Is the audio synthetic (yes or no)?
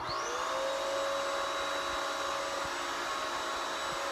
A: no